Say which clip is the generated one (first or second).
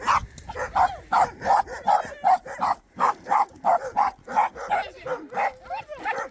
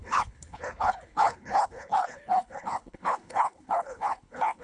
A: second